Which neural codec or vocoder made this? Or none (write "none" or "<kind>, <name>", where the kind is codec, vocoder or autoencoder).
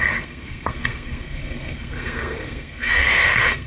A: codec, SNAC